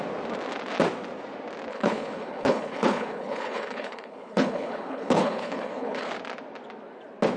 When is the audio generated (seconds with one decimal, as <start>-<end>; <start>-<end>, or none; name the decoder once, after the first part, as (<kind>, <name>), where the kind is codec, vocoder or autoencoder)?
1.7-6.1 (codec, HILCodec)